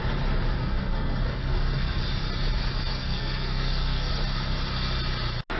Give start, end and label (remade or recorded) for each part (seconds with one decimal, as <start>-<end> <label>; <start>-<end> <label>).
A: 0.0-0.6 recorded; 0.6-2.0 remade; 2.0-3.0 recorded; 3.0-4.1 remade; 4.1-5.6 recorded